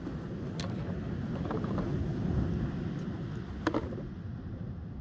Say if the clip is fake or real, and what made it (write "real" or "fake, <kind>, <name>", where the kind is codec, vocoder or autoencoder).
real